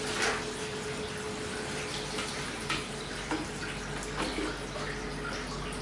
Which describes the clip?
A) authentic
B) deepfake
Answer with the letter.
A